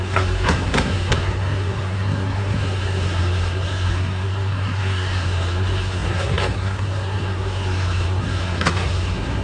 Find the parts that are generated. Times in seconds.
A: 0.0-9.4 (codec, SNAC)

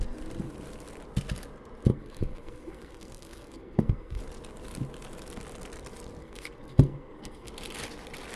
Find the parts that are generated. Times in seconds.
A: 1.9-4.2 (codec, SNAC); 6.2-7.5

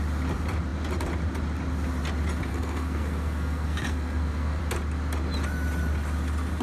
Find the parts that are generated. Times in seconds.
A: 2.5-4.6 (codec, SNAC)

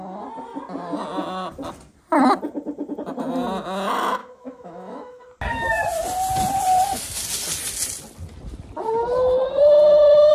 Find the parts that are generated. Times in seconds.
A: 4.2-5.2 (autoencoder, DAC-VAE)

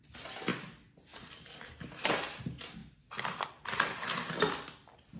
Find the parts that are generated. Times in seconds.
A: none

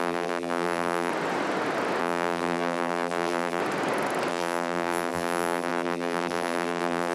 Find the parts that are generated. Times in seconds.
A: 0.0-1.1 (vocoder, BigVGAN v2); 2.0-3.6; 4.3-7.1